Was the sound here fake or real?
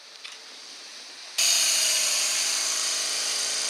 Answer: fake